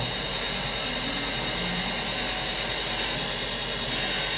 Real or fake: real